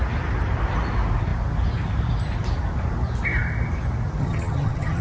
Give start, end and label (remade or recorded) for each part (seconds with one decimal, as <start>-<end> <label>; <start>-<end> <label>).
0.0-4.2 recorded; 4.2-5.0 remade